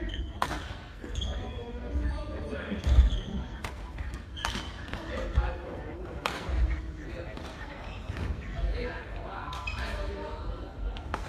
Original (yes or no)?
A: no